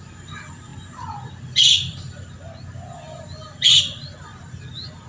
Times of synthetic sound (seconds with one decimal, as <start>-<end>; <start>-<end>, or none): none